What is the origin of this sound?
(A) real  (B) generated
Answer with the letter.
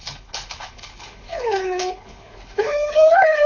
B